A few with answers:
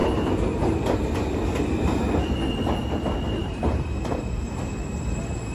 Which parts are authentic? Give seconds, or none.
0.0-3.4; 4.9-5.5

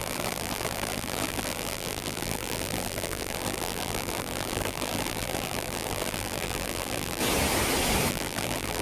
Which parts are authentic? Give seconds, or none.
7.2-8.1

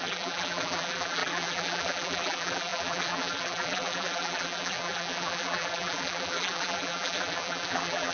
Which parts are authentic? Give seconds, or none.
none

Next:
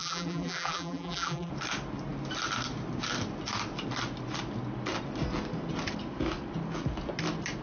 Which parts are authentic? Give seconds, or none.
1.5-7.6